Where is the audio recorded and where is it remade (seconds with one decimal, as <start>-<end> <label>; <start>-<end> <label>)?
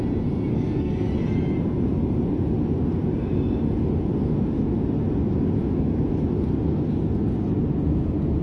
0.0-0.5 recorded; 0.5-1.1 remade; 1.1-8.4 recorded